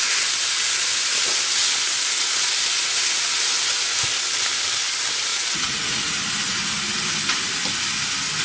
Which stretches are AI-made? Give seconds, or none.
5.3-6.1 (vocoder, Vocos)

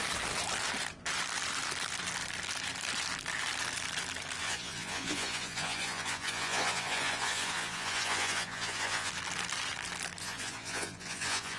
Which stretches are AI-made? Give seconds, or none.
4.4-9.1 (vocoder, Vocos); 10.2-11.6

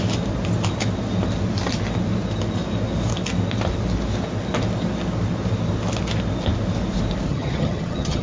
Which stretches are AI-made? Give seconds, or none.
7.3-8.2 (vocoder, HiFi-GAN)

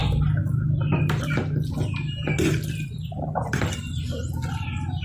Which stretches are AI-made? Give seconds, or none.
2.5-5.0 (vocoder, BigVGAN v2)

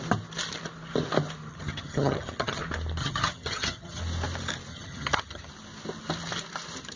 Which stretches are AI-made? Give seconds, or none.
1.5-2.6 (vocoder, HiFi-GAN); 3.0-4.0; 4.7-5.5

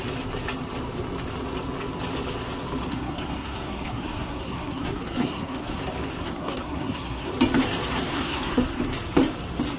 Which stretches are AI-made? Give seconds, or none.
2.9-5.8 (codec, SNAC); 6.2-7.3; 8.1-8.8